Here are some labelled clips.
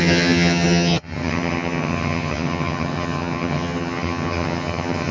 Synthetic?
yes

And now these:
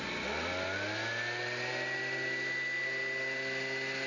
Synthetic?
no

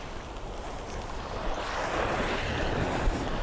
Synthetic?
no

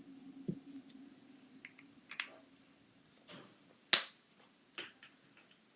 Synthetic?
no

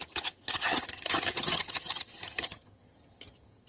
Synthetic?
yes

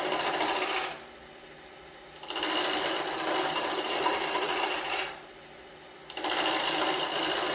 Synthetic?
no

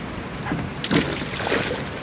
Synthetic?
no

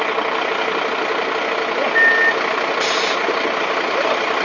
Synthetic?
no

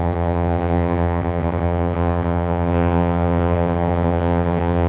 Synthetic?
yes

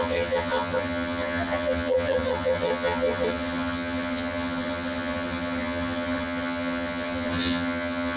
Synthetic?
yes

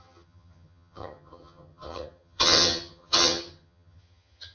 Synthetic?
yes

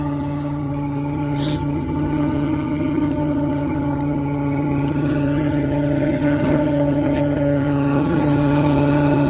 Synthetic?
yes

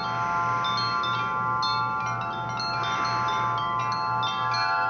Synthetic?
no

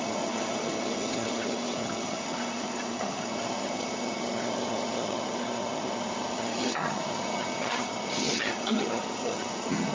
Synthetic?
yes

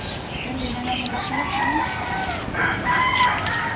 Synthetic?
no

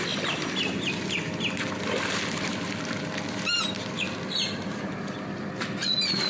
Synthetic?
no